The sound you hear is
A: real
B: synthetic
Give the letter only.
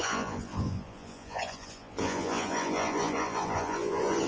B